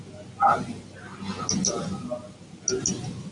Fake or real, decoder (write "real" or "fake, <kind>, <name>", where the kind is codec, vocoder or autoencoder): real